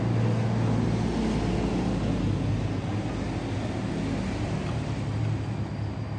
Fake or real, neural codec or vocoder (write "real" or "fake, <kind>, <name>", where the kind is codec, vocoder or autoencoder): real